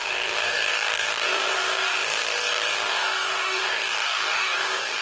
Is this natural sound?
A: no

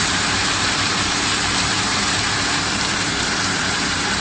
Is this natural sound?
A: no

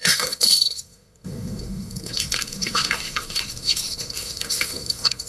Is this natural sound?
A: no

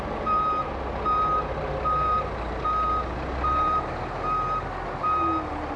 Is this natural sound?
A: yes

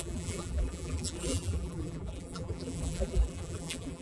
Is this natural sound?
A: no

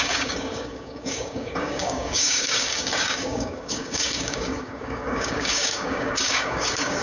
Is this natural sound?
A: no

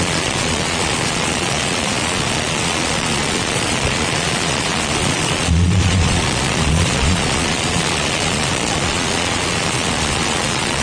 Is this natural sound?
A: no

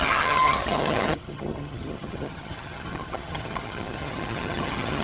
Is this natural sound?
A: no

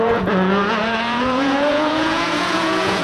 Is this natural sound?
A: no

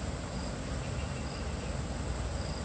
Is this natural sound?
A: yes